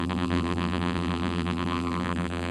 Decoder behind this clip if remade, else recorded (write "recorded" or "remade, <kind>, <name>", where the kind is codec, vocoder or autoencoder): remade, vocoder, BigVGAN v2